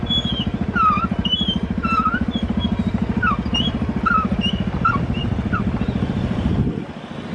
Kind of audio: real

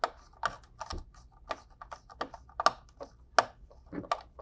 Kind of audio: real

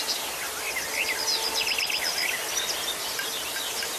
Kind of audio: real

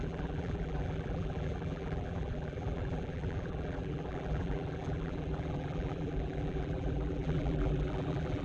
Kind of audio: fake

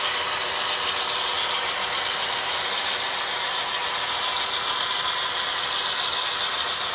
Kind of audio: real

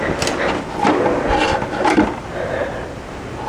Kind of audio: real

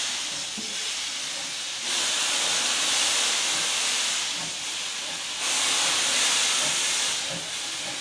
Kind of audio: fake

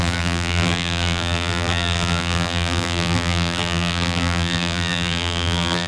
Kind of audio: fake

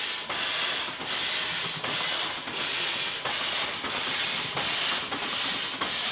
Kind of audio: real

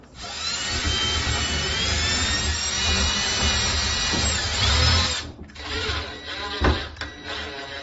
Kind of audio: real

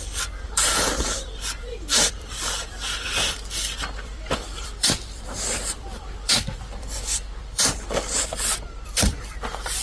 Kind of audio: fake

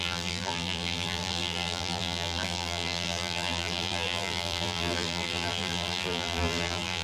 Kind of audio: fake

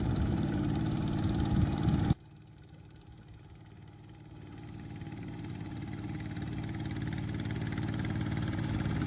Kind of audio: fake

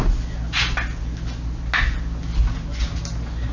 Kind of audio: real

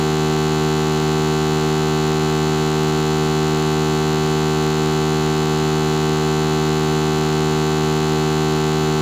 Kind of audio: real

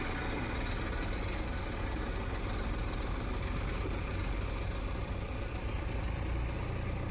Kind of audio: real